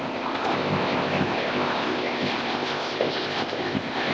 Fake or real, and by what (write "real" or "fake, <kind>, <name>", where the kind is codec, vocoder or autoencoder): fake, codec, ZipCodec